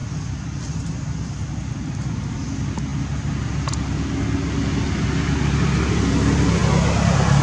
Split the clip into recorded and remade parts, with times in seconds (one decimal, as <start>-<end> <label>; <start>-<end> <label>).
0.0-7.4 recorded